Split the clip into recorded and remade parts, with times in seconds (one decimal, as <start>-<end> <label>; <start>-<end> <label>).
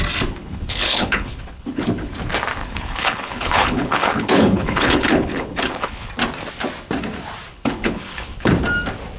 0.0-0.4 recorded; 0.4-2.1 remade; 2.1-2.6 recorded; 2.6-6.1 remade; 6.1-7.5 recorded; 7.5-8.5 remade; 8.5-9.2 recorded